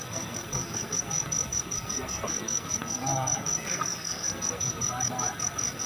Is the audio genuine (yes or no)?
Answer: no